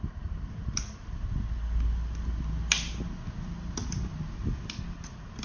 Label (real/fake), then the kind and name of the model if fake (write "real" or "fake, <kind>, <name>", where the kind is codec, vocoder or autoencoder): real